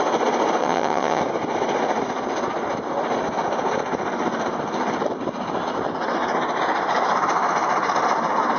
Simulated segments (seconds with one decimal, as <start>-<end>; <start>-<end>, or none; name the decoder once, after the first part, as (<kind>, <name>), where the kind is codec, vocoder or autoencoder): 0.6-1.2 (vocoder, HiFi-GAN)